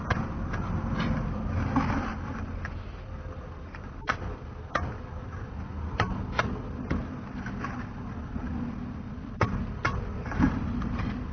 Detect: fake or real fake